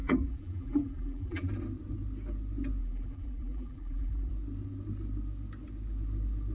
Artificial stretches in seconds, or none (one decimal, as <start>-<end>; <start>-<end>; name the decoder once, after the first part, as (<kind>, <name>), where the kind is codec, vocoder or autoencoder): 0.0-1.5 (vocoder, BigVGAN v2); 2.8-4.3